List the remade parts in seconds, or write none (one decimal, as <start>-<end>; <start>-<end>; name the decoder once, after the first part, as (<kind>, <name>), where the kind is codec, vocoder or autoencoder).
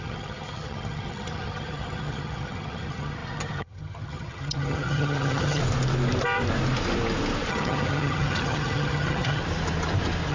0.0-5.6 (vocoder, HiFi-GAN); 7.5-9.4